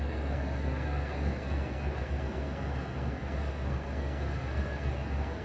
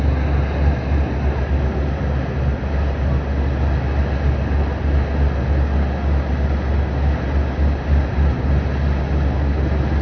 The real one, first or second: second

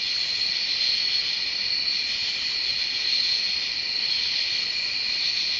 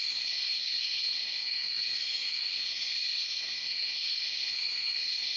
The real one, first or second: first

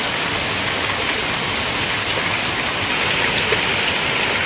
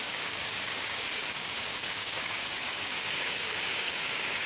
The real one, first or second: first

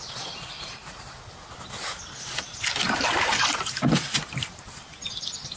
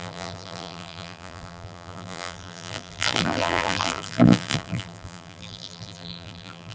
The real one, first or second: first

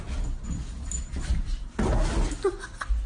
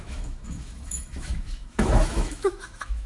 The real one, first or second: first